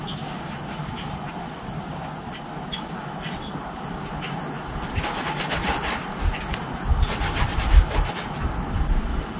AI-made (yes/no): no